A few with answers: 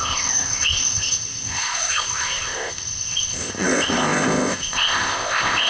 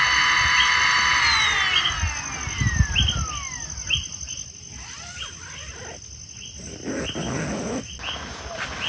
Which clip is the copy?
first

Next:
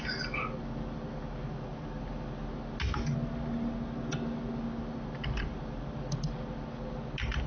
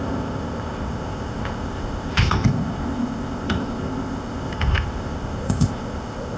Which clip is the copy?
second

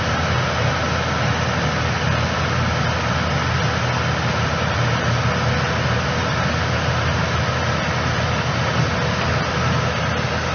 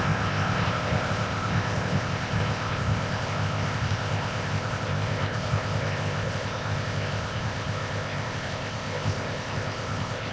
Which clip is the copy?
second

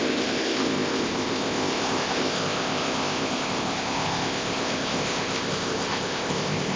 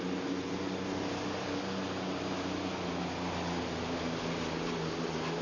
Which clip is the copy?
first